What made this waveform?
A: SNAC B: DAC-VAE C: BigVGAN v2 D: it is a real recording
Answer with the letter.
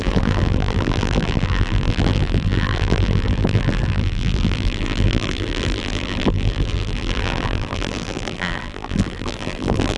C